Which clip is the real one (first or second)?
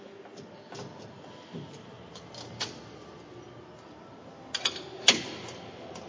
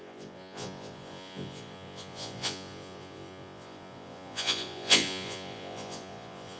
first